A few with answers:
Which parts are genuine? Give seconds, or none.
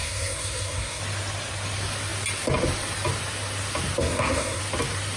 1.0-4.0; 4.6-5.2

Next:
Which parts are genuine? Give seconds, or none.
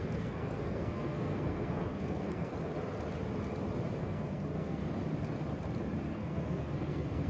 2.5-4.0; 4.8-6.1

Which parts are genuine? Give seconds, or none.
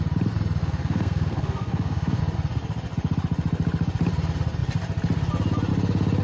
0.0-0.6; 2.2-6.2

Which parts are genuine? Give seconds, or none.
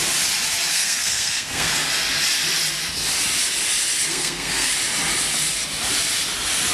0.0-0.7; 1.7-4.1; 4.7-6.7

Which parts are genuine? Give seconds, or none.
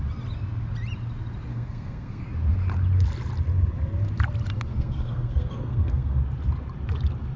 0.0-1.5; 2.2-4.7; 6.2-7.4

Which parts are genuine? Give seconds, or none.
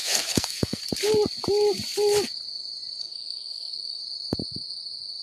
0.8-3.0; 4.0-5.2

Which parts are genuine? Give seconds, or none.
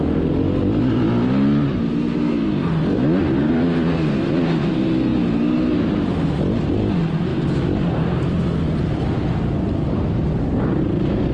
0.0-11.3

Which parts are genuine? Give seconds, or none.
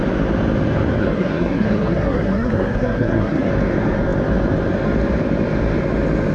0.0-1.0; 3.5-6.3